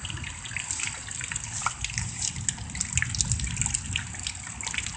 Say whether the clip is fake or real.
real